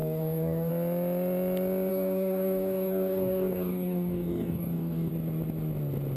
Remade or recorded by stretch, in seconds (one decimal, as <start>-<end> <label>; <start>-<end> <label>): 0.0-0.7 remade; 0.7-1.9 recorded; 1.9-5.1 remade; 5.1-6.2 recorded